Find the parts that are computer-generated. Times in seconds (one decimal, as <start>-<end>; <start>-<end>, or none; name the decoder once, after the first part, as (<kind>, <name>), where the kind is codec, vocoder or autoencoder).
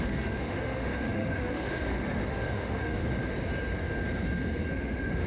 0.0-3.2 (autoencoder, DAC-VAE); 4.7-5.3